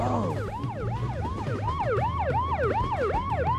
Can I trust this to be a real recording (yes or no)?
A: yes